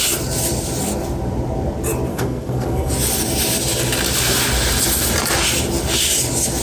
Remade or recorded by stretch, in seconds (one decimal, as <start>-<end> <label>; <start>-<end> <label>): 0.0-2.1 recorded; 2.1-2.9 remade; 2.9-6.6 recorded